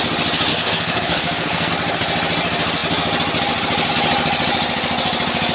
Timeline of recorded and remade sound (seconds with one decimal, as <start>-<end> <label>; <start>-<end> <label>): 0.0-0.5 recorded; 0.5-1.7 remade; 1.7-5.5 recorded

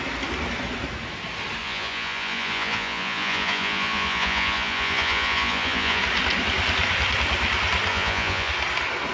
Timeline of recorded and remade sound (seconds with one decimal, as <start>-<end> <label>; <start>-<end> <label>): 0.0-1.6 recorded; 1.6-6.0 remade; 6.0-7.9 recorded; 7.9-8.5 remade; 8.5-9.1 recorded

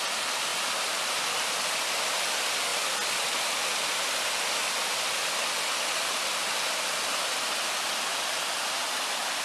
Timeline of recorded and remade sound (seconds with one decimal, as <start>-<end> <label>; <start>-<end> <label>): 0.0-0.5 recorded; 0.5-1.1 remade; 1.1-9.4 recorded